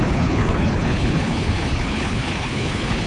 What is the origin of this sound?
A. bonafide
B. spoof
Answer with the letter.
B